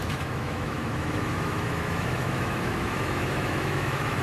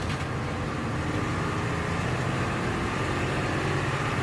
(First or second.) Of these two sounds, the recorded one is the second